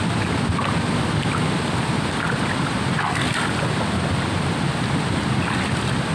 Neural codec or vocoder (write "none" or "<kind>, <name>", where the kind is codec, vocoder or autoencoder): none